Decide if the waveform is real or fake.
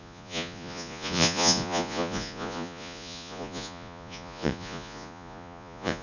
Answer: fake